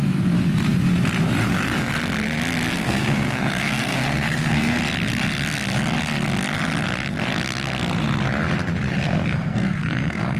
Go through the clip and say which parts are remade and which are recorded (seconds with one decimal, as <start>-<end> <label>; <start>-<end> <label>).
0.0-2.7 recorded; 2.7-4.8 remade; 4.8-8.9 recorded; 8.9-10.4 remade